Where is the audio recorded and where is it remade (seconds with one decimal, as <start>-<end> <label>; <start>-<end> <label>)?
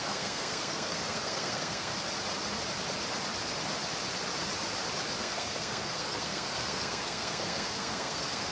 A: 0.0-1.9 remade; 1.9-5.2 recorded; 5.2-8.5 remade